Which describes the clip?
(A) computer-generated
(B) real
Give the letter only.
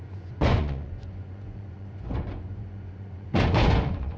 A